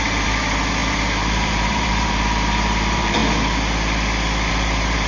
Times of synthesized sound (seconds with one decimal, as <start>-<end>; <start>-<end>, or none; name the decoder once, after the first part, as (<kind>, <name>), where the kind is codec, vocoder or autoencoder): 0.0-3.2 (vocoder, BigVGAN v2); 4.5-5.1